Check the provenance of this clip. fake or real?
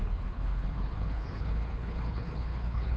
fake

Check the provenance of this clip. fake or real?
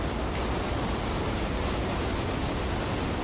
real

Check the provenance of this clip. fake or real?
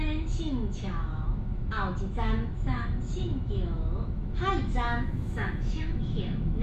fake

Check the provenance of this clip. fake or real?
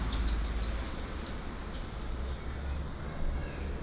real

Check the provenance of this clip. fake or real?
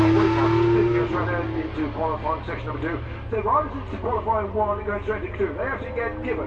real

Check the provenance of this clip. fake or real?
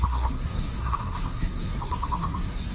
fake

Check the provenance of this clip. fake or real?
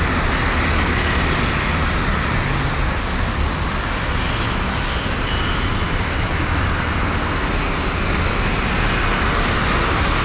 real